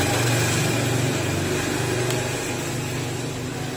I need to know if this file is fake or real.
real